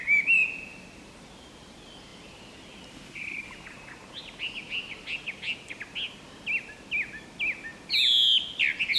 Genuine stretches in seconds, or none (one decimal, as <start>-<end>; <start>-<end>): 0.0-9.0